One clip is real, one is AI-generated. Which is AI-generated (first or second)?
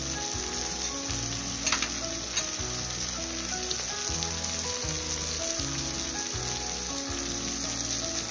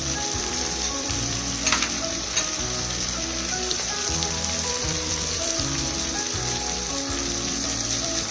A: second